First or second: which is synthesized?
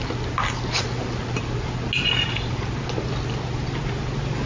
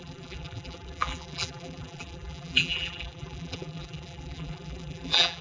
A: second